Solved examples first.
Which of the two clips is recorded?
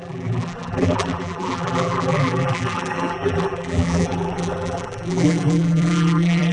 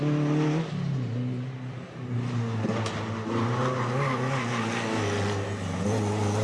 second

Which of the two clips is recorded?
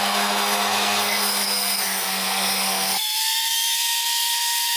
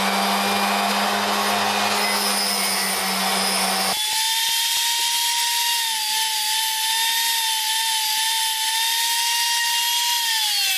second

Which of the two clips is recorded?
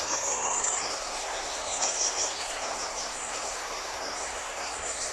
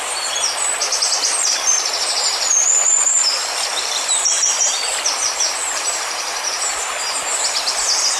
second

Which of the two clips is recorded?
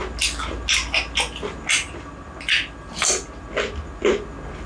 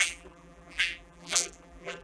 first